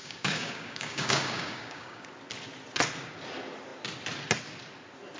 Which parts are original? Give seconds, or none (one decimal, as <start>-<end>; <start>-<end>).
2.1-5.2